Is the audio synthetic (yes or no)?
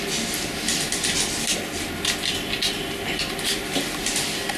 no